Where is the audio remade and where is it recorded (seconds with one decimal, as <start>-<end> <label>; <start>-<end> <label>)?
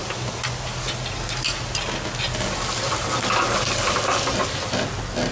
0.0-5.3 recorded